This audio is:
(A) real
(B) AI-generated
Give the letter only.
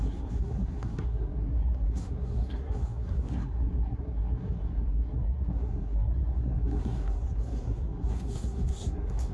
B